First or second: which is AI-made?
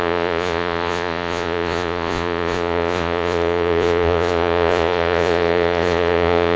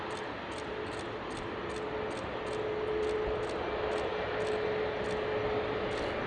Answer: first